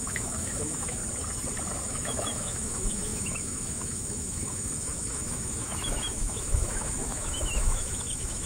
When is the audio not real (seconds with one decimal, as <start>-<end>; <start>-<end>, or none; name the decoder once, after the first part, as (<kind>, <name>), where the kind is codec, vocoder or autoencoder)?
0.0-1.0 (autoencoder, DAC-VAE); 1.8-8.5